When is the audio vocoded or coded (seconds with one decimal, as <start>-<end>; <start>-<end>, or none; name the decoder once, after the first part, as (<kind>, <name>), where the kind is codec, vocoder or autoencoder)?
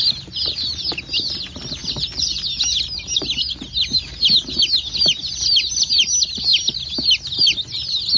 none